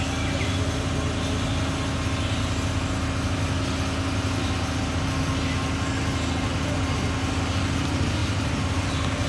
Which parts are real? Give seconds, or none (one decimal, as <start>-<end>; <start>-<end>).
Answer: 0.0-8.2; 8.9-9.3